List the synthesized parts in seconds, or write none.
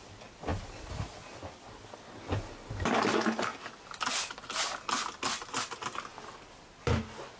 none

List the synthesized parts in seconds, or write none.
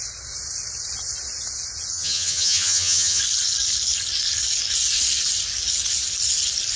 1.9-3.2 (vocoder, HiFi-GAN)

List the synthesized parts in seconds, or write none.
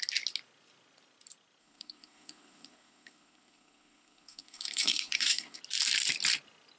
1.6-5.6 (codec, SNAC)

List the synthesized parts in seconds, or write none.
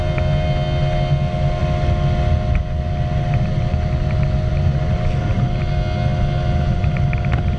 none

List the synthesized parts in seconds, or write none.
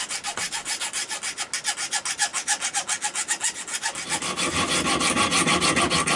none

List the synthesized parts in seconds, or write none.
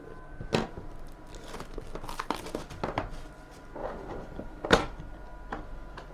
3.8-4.8 (vocoder, BigVGAN v2)